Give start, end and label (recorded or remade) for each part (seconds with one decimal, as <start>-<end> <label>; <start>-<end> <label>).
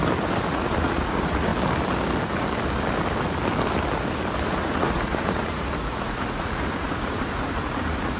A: 0.0-0.5 recorded; 0.5-1.5 remade; 1.5-4.4 recorded; 4.4-8.2 remade